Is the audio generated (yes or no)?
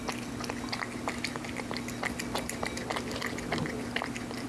no